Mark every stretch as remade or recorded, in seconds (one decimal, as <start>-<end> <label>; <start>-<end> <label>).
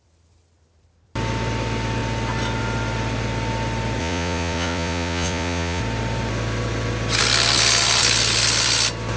0.0-4.0 recorded; 4.0-5.8 remade; 5.8-9.2 recorded